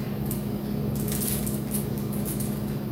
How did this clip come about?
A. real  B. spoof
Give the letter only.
B